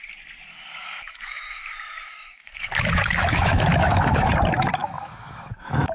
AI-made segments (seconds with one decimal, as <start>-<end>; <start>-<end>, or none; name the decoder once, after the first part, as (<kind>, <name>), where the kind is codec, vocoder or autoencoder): 0.8-4.3 (autoencoder, DAC-VAE); 4.8-5.9

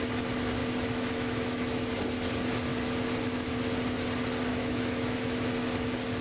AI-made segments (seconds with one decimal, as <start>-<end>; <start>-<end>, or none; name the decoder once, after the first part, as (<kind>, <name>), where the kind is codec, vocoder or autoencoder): 0.6-1.9 (autoencoder, DAC-VAE); 4.5-5.6

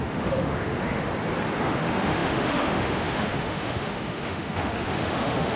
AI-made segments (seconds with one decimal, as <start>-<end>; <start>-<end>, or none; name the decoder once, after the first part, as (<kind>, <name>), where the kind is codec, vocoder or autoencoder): 0.0-1.1 (autoencoder, DAC-VAE); 1.7-5.6

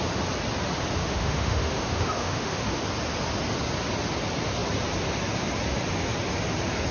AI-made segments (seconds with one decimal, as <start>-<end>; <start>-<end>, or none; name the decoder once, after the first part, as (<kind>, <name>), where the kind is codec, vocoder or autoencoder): 1.0-2.8 (autoencoder, DAC-VAE)

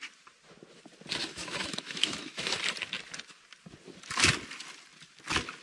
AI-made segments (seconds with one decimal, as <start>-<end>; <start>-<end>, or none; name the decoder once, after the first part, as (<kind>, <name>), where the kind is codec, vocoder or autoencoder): 1.2-2.6 (autoencoder, DAC-VAE)

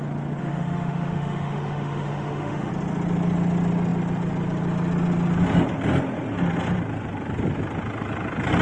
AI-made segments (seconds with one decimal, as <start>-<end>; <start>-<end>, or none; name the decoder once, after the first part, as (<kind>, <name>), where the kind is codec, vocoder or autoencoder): 0.4-2.7 (autoencoder, DAC-VAE)